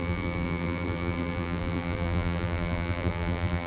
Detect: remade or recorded remade